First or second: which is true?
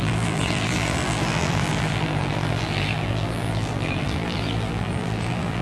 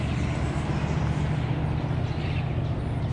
second